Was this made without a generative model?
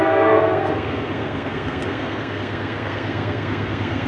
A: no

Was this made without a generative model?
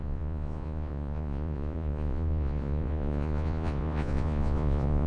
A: no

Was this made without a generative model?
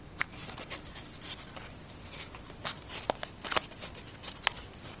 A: yes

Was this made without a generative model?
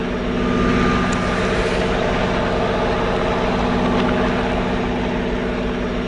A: yes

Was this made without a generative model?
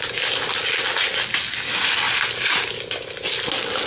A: yes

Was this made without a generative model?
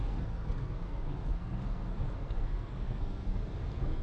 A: no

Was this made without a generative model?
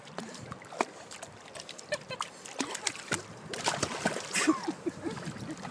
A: yes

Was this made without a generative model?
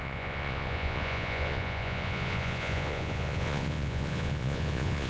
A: no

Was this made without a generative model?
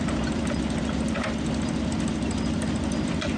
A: yes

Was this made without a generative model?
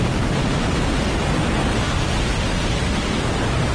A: yes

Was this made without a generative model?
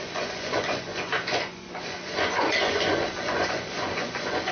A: no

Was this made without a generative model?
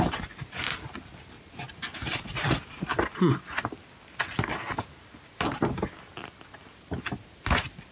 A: yes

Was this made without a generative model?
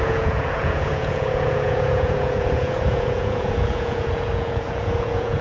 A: no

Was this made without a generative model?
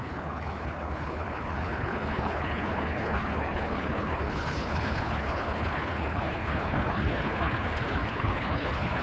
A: no